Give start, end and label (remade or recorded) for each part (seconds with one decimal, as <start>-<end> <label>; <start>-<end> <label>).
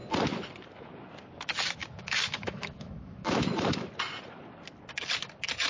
0.0-1.8 recorded; 1.8-3.9 remade; 3.9-5.7 recorded